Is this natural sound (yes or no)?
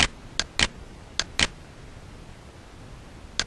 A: yes